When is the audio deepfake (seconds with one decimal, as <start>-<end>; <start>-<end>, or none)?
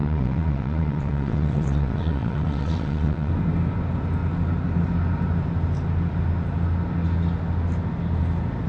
0.0-3.3